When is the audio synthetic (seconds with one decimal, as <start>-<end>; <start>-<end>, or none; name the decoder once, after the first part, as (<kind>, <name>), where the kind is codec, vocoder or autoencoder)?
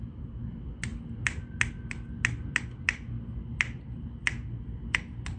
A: none